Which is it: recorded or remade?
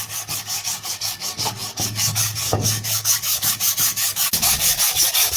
remade